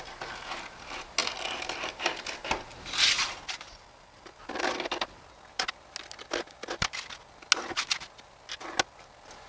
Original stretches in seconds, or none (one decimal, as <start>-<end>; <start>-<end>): 0.0-9.5

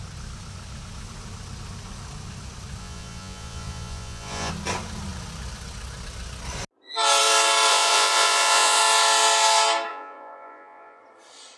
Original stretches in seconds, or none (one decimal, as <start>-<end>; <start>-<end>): 0.0-2.8; 4.5-7.7; 8.8-9.9; 11.0-11.6

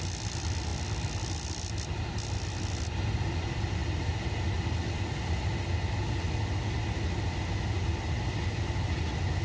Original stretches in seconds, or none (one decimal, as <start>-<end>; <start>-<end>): 0.0-9.4

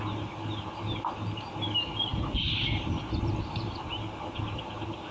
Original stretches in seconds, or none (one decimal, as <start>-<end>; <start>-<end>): 0.0-5.1

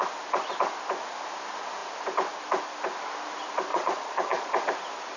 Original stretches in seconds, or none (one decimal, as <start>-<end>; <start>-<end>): 0.0-3.7; 4.5-5.2

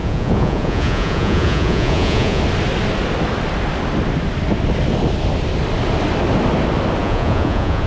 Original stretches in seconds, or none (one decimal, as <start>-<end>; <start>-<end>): 2.4-7.0

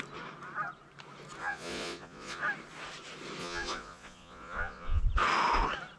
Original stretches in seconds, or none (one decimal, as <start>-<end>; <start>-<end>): 0.0-1.4; 2.4-3.4; 5.0-6.0